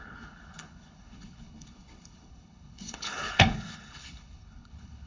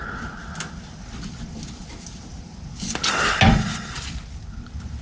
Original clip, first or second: second